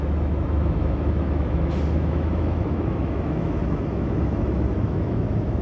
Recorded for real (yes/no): no